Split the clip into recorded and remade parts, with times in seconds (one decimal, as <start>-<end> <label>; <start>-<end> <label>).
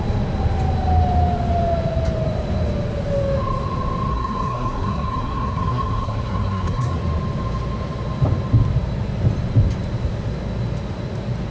0.0-4.1 recorded; 4.1-7.0 remade; 7.0-11.5 recorded